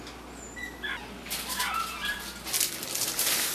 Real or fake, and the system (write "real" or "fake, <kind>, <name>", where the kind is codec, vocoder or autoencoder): real